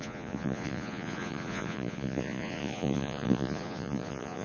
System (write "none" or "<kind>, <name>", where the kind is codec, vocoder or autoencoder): vocoder, Vocos